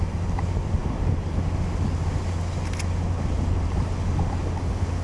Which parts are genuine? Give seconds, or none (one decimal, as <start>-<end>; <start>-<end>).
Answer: 0.0-5.0